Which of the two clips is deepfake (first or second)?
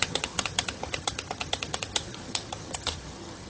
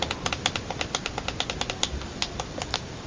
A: first